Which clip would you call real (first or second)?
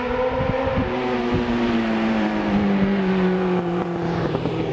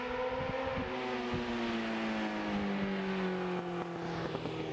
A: second